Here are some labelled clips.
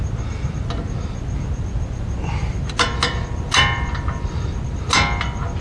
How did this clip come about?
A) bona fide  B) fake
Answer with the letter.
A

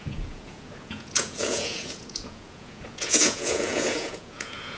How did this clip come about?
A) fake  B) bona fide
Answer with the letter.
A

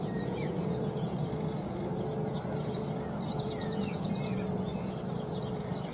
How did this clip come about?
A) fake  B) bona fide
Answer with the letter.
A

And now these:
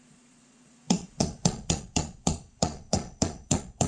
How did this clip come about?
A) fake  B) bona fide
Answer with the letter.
A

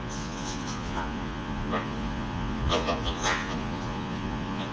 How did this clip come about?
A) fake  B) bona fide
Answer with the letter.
A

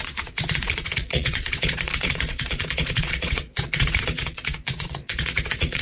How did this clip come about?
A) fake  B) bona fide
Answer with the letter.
A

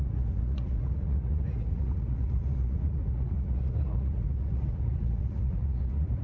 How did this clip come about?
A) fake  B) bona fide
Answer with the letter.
A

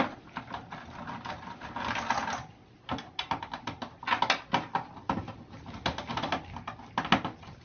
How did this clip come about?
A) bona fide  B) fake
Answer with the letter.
A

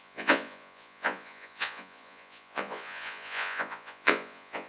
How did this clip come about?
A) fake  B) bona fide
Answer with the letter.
A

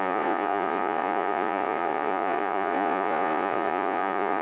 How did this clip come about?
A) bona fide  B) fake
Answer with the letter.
B